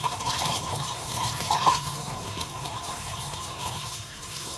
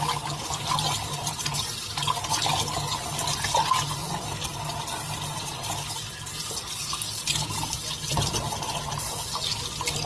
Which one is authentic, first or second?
second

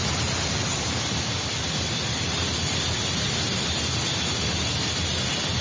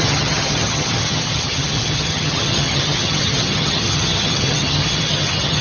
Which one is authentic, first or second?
first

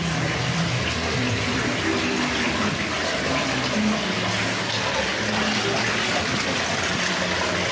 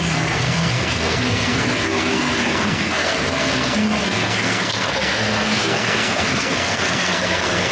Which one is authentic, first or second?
first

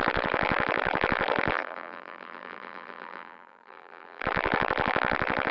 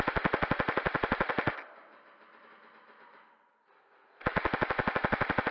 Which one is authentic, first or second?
second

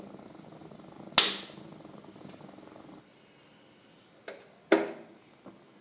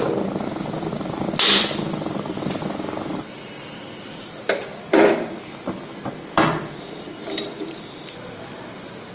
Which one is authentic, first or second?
first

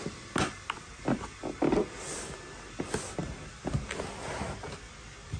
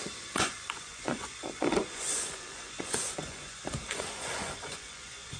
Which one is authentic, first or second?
first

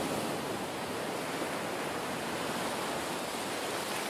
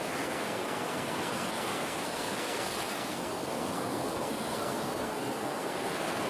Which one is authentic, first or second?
first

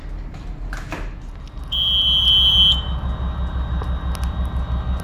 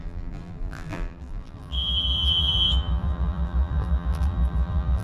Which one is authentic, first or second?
first